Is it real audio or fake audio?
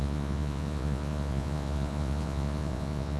fake